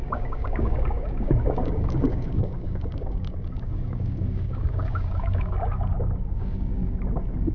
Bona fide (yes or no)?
no